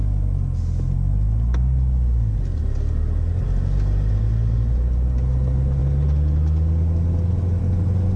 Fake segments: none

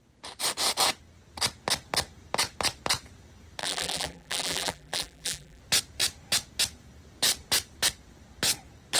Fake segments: 3.6-5.6 (vocoder, BigVGAN v2)

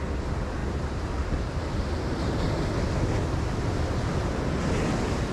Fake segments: 0.6-2.4 (vocoder, BigVGAN v2)